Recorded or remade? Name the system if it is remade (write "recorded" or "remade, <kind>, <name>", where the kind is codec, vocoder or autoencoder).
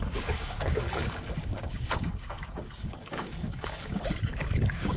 remade, codec, DAC